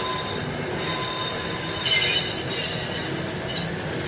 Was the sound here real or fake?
real